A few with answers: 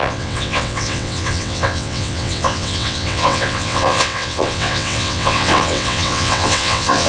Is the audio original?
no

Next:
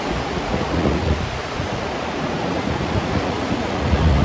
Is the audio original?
no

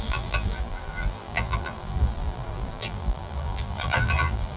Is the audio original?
no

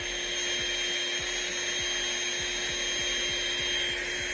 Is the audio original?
yes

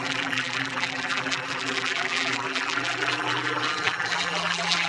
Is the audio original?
no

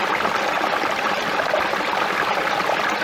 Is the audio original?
yes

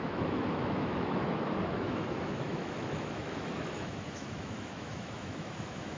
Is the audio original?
no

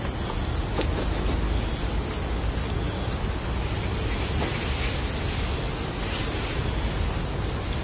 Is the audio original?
yes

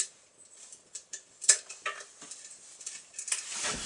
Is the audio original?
yes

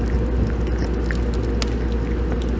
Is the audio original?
yes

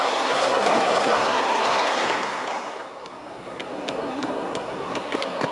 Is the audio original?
no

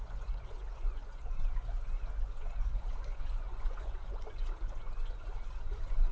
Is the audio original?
no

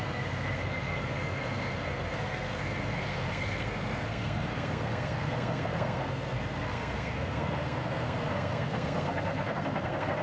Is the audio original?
no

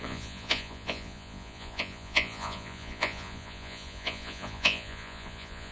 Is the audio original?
no